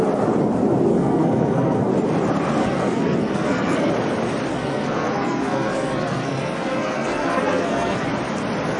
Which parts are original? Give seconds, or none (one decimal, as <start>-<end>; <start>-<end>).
0.0-0.9; 1.9-2.6; 3.9-4.5; 8.1-8.8